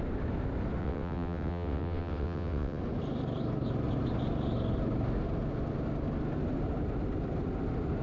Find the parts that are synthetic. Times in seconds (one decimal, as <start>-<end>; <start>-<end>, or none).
0.8-2.8